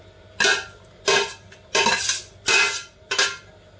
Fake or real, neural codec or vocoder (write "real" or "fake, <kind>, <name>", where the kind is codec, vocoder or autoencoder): real